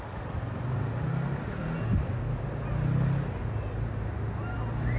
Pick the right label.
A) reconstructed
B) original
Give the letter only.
B